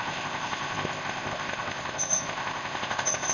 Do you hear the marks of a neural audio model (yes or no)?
yes